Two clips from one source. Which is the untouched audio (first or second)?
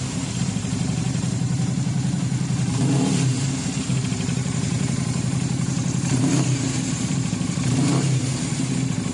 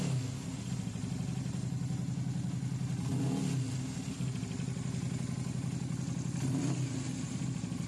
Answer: second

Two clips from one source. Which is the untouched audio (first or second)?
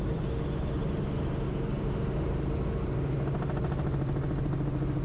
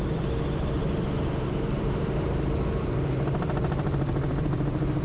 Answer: first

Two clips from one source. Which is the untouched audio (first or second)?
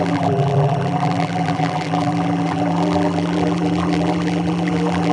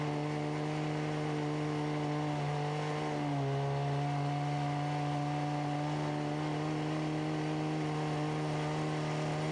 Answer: second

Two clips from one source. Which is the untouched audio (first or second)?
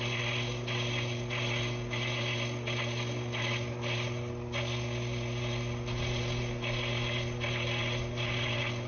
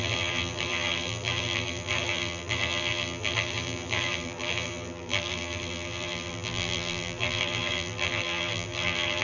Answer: first